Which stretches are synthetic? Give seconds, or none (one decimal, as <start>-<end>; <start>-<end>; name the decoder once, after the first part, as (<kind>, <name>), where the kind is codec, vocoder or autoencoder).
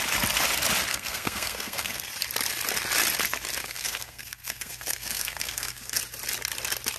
0.9-2.1 (codec, SNAC); 3.6-6.0